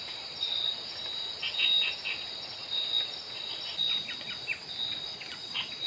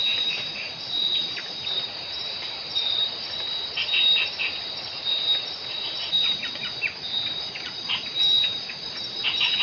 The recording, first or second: first